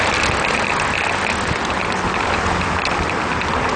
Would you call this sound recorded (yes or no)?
yes